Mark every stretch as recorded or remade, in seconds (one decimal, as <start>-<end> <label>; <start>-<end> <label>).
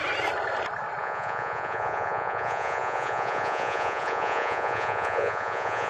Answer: 0.0-1.0 recorded; 1.0-5.9 remade